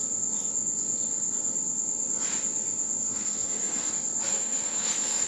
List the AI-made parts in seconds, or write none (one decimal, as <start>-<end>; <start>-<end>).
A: 3.0-3.9; 4.3-5.3